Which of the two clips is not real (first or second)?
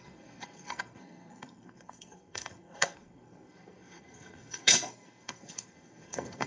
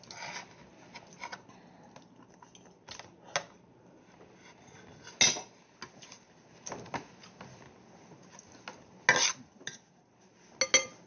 first